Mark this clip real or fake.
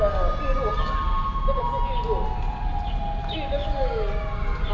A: real